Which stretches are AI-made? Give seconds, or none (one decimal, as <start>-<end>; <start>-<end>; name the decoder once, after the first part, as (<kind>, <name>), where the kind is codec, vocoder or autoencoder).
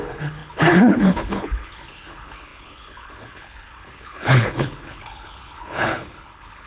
0.0-6.7 (codec, HILCodec)